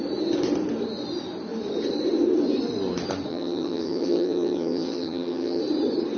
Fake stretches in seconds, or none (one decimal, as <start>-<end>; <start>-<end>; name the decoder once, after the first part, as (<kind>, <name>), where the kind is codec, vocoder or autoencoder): 3.3-5.6 (vocoder, HiFi-GAN)